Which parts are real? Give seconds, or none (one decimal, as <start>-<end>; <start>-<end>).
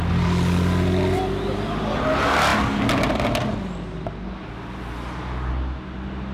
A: 0.0-6.3